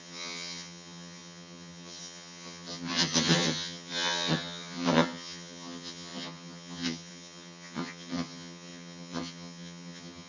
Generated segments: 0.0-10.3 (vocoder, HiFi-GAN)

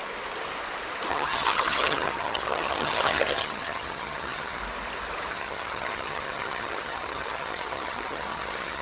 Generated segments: 1.1-4.6 (vocoder, HiFi-GAN); 5.3-8.8

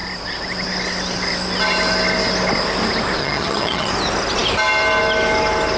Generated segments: 3.2-3.9 (vocoder, HiFi-GAN)

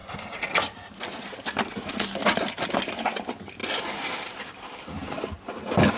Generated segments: none

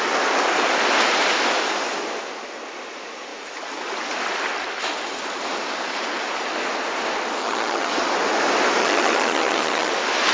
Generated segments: 7.4-7.9 (vocoder, HiFi-GAN); 8.8-9.9

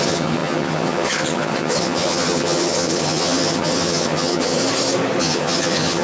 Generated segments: 0.0-4.6 (vocoder, HiFi-GAN); 5.2-6.0

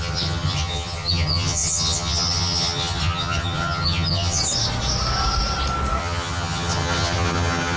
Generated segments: 0.0-4.4 (vocoder, HiFi-GAN); 6.0-7.8

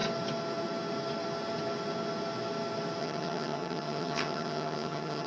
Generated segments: 3.0-5.3 (vocoder, HiFi-GAN)